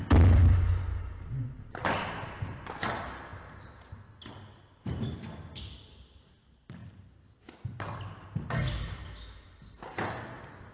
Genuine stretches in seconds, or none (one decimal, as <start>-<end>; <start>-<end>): 0.0-10.7